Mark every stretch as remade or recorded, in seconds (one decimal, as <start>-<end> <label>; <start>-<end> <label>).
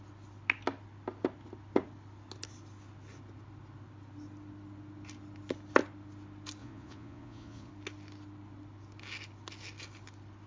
0.0-6.6 recorded; 6.6-7.7 remade; 7.7-10.5 recorded